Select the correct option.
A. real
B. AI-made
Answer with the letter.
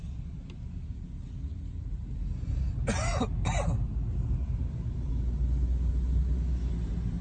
A